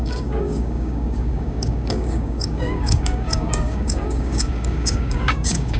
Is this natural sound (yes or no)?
no